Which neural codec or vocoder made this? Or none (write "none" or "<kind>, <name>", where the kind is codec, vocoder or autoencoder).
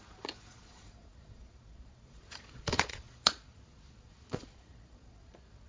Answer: vocoder, Vocos